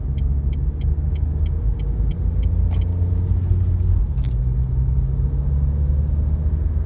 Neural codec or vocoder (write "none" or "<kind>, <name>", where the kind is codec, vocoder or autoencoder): none